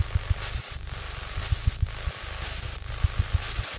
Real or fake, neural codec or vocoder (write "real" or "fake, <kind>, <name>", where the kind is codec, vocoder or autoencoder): real